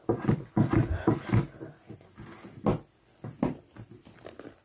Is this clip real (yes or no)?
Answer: yes